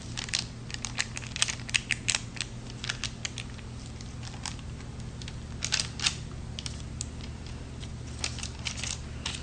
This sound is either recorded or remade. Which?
recorded